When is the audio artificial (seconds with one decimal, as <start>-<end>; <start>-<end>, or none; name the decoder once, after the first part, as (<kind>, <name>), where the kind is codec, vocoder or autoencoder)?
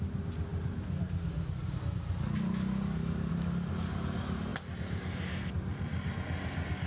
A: none